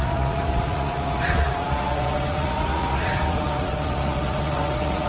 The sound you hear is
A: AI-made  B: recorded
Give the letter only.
A